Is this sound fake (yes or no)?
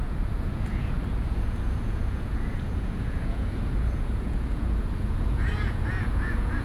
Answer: yes